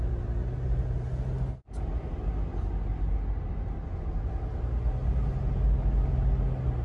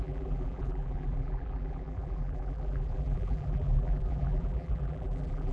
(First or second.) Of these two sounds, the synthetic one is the second